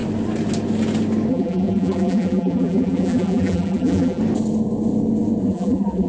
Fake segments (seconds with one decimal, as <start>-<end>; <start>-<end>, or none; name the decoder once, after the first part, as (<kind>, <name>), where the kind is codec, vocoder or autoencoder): 1.3-4.2 (vocoder, BigVGAN v2); 5.4-6.1